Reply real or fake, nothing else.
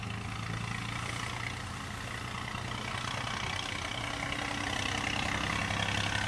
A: real